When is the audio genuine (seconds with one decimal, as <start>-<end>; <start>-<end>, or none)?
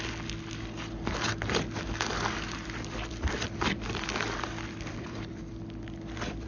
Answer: 0.0-2.1; 5.5-6.5